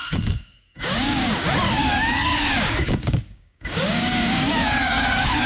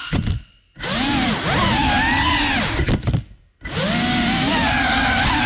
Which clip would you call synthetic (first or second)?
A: first